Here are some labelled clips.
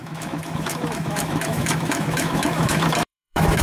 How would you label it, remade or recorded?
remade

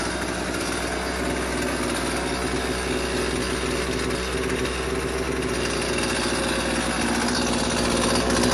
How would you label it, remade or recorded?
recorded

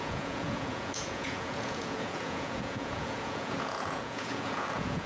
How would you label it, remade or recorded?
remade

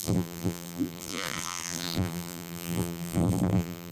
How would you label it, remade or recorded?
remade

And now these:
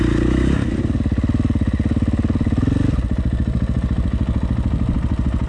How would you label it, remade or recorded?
recorded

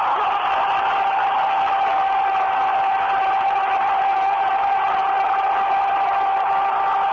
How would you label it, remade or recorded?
recorded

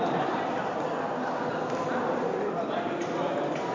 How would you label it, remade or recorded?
recorded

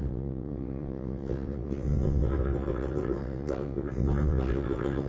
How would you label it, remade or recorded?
remade